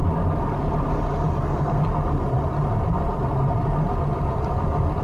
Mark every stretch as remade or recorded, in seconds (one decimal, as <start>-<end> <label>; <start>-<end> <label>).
0.0-1.4 recorded; 1.4-1.8 remade; 1.8-5.0 recorded